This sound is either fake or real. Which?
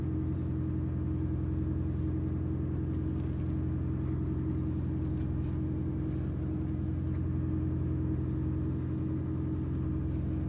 real